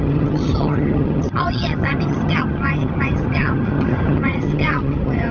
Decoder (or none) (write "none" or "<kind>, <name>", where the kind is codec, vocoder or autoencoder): vocoder, HiFi-GAN